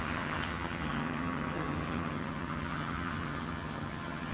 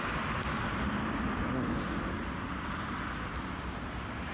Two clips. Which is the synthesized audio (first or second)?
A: first